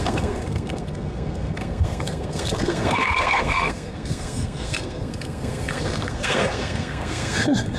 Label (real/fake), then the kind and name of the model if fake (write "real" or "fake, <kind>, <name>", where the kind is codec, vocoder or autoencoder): fake, codec, SNAC